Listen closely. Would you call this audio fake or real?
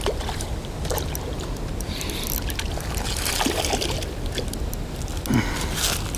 real